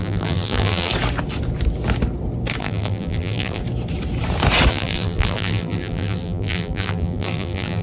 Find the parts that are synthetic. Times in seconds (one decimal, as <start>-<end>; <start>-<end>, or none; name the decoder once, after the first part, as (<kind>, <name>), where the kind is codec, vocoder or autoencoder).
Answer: 0.0-0.9 (vocoder, BigVGAN v2); 2.6-3.6; 4.7-7.8

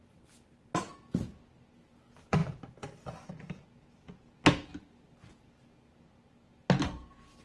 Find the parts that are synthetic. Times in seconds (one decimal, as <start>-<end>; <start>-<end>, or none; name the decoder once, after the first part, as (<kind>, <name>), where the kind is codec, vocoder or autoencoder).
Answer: none

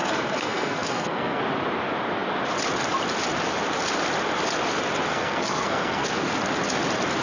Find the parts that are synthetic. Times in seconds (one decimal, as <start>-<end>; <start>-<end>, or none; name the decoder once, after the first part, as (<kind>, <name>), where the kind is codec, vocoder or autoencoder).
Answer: 0.0-1.4 (codec, SNAC); 5.1-6.3